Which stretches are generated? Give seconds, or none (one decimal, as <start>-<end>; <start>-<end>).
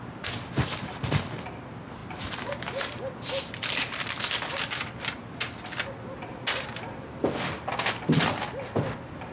none